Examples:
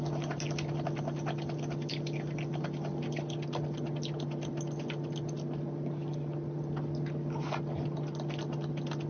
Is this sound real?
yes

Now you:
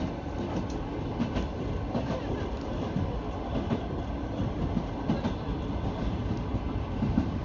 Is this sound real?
yes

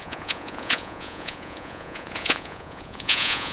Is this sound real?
no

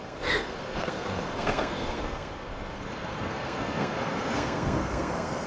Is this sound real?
no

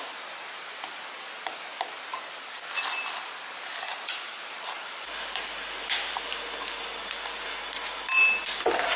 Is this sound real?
yes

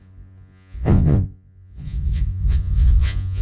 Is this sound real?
no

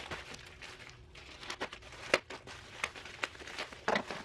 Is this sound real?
yes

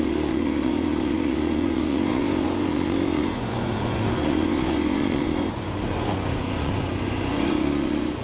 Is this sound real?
no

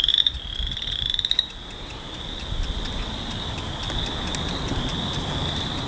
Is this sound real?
yes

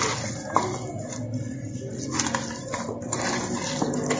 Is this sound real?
yes